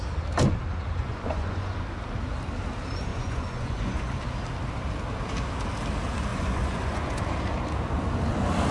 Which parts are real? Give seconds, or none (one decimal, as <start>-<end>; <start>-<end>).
0.0-1.0; 1.7-3.1; 4.1-6.3; 7.2-8.7